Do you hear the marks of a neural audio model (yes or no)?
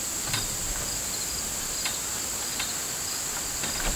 no